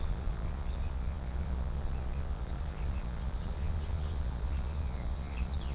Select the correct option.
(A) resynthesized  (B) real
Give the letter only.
A